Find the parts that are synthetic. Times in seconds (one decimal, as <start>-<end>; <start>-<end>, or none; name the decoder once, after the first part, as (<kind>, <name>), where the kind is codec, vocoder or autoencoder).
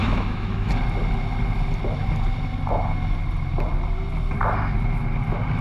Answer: 0.0-0.7 (autoencoder, DAC-VAE)